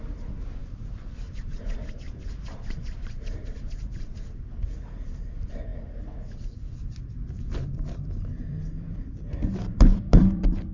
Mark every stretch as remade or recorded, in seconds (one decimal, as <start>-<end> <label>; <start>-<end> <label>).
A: 0.0-10.7 remade